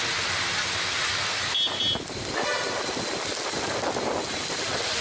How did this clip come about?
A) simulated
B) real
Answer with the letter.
B